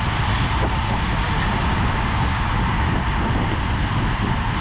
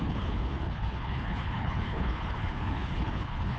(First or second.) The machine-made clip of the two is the second